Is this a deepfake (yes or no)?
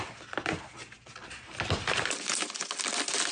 no